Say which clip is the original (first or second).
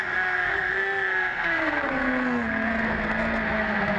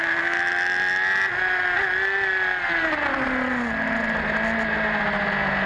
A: second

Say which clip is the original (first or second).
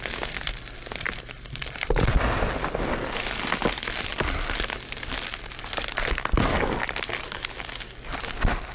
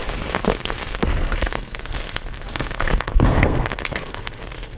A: first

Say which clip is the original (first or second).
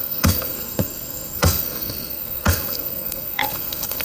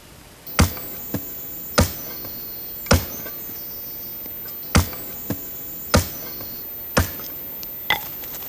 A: second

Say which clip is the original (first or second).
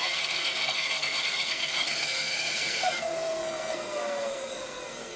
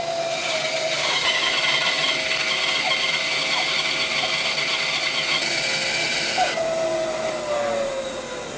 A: second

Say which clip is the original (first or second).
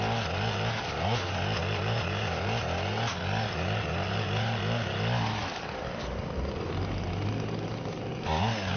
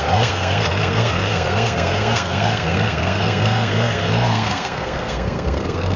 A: first